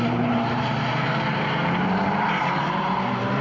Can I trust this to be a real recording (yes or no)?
no